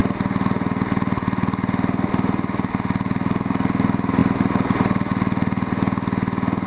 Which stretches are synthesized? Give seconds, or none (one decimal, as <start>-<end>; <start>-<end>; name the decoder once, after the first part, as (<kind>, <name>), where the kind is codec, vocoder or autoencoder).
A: none